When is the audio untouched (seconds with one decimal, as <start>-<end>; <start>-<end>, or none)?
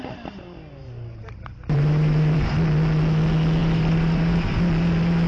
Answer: 0.0-0.8; 2.5-3.6; 4.6-5.3